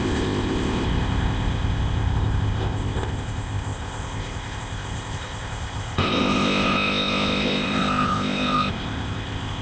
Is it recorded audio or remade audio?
remade